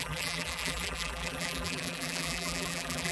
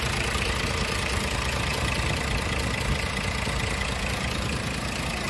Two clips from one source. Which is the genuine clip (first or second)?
second